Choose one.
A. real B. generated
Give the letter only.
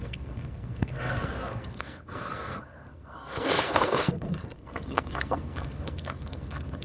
B